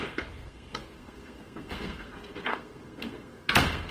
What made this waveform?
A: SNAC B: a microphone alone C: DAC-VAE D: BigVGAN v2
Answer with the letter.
A